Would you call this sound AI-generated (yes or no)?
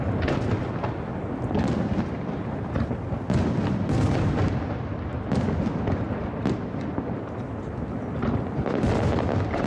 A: no